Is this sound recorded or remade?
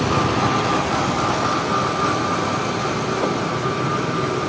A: recorded